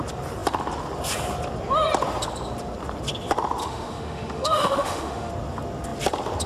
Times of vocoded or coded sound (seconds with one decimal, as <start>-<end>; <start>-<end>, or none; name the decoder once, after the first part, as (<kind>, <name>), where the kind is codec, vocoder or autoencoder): 3.6-5.3 (autoencoder, DAC-VAE)